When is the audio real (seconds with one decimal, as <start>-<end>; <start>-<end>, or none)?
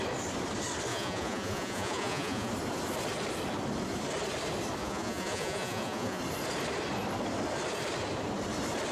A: 0.0-0.9; 2.5-4.8; 6.2-8.9